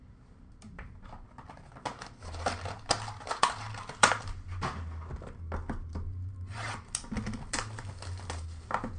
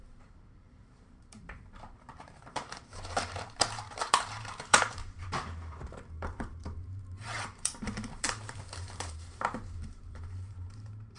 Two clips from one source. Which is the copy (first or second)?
second